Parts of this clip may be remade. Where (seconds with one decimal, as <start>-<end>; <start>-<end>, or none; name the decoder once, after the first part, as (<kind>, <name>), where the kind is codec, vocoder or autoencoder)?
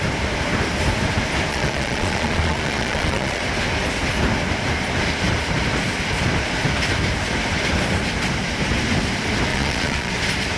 1.5-3.4 (vocoder, Vocos); 9.5-10.1